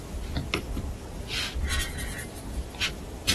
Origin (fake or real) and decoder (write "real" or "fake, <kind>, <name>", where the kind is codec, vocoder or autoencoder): real